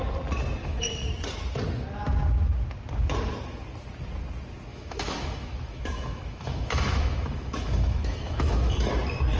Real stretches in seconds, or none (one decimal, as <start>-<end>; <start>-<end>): 0.0-0.6; 1.1-4.7; 8.9-9.4